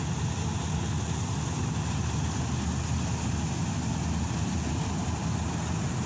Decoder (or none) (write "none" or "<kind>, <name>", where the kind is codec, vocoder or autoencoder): none